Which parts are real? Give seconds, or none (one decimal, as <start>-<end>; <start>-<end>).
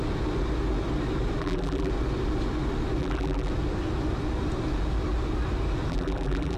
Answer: 0.0-1.4; 1.9-3.0; 3.5-5.9